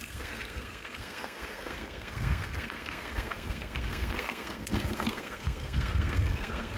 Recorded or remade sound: remade